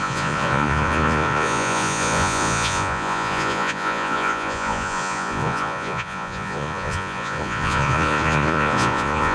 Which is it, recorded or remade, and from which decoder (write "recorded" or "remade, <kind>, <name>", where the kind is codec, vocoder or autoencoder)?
remade, vocoder, Vocos